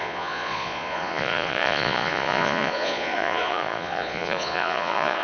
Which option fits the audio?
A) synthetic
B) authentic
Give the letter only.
A